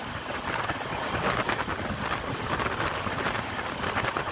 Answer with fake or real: real